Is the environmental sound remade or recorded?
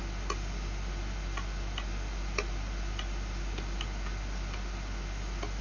recorded